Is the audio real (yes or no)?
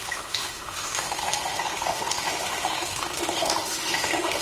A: no